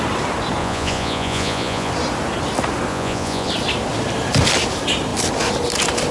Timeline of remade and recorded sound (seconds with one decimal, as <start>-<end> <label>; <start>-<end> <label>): 0.0-0.6 recorded; 0.6-1.9 remade; 1.9-2.9 recorded; 2.9-3.5 remade; 3.5-6.1 recorded

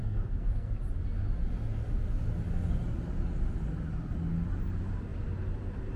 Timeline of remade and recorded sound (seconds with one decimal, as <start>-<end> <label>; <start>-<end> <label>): 0.0-0.7 remade; 0.7-6.0 recorded

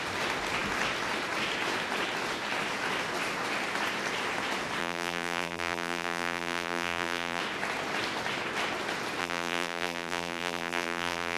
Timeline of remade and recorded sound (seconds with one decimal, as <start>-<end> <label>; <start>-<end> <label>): 0.0-4.8 recorded; 4.8-7.4 remade; 7.4-9.2 recorded; 9.2-11.4 remade

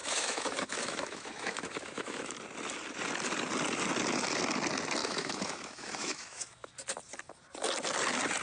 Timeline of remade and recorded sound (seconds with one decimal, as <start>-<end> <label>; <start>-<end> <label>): 0.0-2.3 remade; 2.3-5.0 recorded; 5.0-6.7 remade; 6.7-8.4 recorded

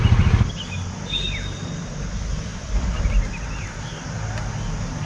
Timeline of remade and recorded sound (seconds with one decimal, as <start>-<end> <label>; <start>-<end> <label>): 0.0-5.1 recorded

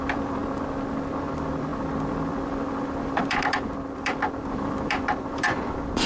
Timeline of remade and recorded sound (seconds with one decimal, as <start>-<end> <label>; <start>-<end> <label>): 0.0-0.4 remade; 0.4-1.2 recorded; 1.2-1.7 remade; 1.7-2.3 recorded; 2.3-6.1 remade

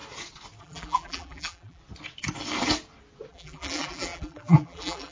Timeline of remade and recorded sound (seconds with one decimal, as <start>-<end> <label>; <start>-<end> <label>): 0.0-0.6 recorded; 0.6-1.8 remade; 1.8-3.3 recorded; 3.3-5.1 remade